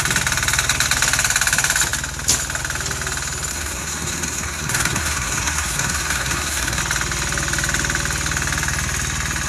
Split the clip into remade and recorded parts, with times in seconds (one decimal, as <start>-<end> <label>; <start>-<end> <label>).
0.0-3.5 recorded; 3.5-6.8 remade; 6.8-9.5 recorded